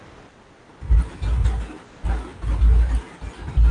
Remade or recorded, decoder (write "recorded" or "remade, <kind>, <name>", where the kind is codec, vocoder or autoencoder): recorded